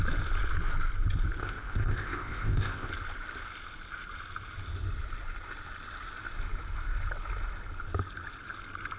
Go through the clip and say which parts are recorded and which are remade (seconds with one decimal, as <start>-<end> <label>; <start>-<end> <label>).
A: 0.0-1.4 recorded; 1.4-2.9 remade; 2.9-9.0 recorded